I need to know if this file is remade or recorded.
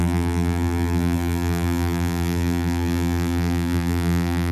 remade